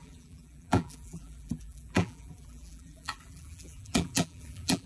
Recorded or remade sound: remade